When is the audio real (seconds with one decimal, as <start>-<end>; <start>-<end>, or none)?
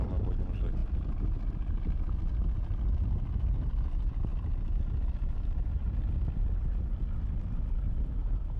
0.0-8.6